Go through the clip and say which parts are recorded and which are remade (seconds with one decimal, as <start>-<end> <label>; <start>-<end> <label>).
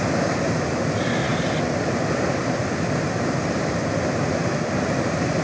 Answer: 0.0-5.4 recorded